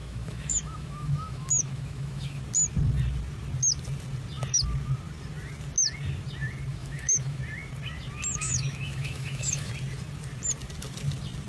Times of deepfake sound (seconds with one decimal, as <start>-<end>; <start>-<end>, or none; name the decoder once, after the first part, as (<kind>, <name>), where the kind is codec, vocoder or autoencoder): 0.0-2.4 (autoencoder, DAC-VAE); 6.7-7.4; 8.3-9.7